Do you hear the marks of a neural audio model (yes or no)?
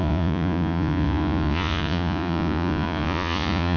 yes